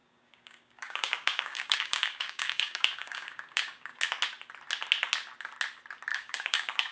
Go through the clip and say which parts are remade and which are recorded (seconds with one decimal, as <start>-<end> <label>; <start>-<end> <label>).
0.0-4.0 remade; 4.0-6.1 recorded; 6.1-6.9 remade